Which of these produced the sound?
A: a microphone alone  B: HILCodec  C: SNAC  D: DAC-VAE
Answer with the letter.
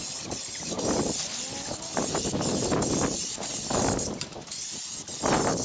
A